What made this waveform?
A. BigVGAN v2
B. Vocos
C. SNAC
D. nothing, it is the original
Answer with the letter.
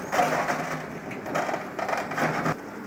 D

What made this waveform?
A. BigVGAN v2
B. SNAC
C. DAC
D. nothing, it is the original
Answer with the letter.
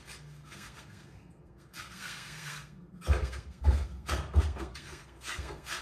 B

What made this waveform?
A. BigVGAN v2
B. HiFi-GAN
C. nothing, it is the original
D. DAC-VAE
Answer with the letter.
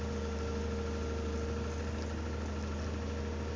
C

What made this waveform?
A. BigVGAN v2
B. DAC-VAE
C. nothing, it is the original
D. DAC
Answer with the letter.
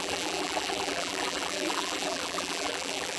A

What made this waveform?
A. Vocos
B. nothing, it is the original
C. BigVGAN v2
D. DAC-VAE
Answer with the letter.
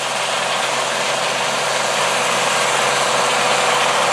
B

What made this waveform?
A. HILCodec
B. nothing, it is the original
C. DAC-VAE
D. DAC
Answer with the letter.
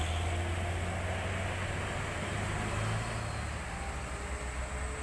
B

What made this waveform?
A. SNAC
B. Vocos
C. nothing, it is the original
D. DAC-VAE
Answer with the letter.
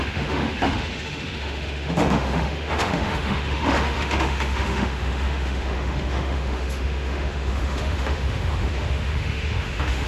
D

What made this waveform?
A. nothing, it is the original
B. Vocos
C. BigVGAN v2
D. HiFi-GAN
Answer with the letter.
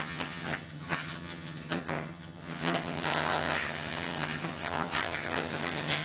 D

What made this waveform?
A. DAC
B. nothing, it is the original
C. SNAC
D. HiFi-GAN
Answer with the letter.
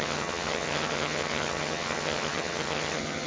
D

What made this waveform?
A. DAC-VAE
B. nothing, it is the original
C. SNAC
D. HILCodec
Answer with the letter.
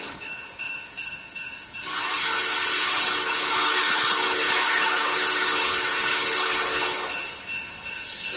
D